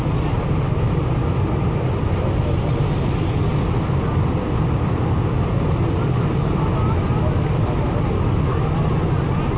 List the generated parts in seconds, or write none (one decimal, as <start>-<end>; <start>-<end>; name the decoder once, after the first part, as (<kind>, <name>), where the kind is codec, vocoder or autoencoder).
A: none